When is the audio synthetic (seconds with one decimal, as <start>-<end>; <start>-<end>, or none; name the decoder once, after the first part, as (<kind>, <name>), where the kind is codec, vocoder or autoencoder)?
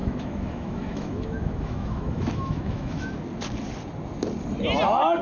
0.0-3.1 (autoencoder, DAC-VAE)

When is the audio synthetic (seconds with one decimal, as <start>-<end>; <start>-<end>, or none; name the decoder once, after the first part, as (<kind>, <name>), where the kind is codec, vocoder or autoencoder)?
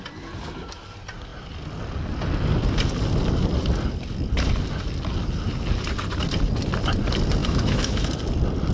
7.4-8.1 (autoencoder, DAC-VAE)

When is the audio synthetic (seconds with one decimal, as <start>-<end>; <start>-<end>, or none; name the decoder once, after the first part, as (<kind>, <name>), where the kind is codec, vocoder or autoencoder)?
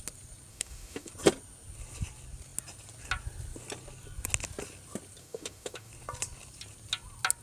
0.5-1.1 (autoencoder, DAC-VAE); 5.2-5.9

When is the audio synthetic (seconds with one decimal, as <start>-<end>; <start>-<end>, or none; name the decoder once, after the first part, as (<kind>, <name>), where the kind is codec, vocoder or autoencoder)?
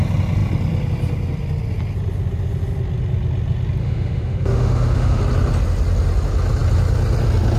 3.8-5.2 (autoencoder, DAC-VAE)